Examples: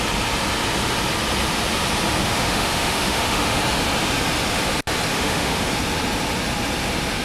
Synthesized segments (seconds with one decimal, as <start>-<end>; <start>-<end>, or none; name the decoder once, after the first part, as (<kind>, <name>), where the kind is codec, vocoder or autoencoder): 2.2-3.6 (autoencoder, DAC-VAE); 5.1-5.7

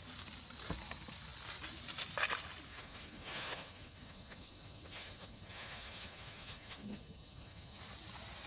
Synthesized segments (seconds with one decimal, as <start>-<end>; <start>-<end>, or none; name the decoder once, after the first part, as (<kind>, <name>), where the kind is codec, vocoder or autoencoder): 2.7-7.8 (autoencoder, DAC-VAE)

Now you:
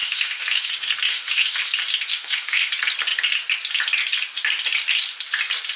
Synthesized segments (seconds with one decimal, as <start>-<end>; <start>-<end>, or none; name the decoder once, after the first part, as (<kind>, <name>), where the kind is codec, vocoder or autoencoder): 0.0-0.7 (autoencoder, DAC-VAE); 1.1-1.7; 2.1-2.7